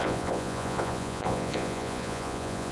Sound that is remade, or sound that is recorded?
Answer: remade